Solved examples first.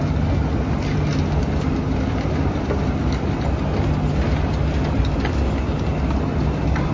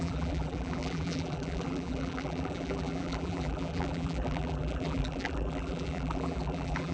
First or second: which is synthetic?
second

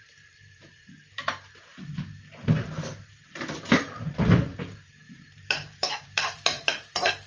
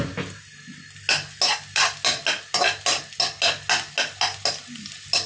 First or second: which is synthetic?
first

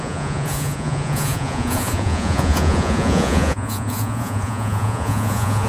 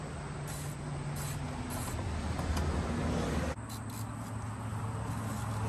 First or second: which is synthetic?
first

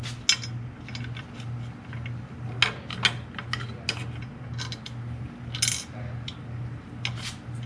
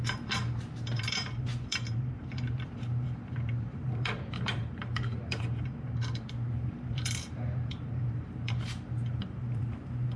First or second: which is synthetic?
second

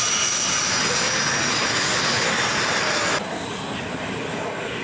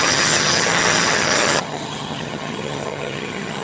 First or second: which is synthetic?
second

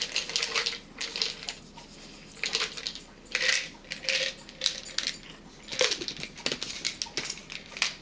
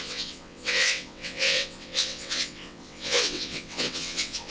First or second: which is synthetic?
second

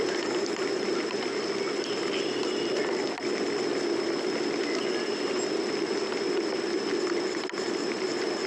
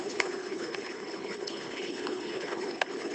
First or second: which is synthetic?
second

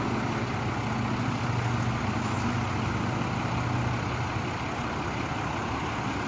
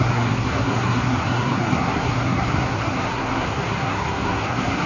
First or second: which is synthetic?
second